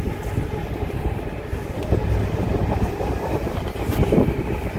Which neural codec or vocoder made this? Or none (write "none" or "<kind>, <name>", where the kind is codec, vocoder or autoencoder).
none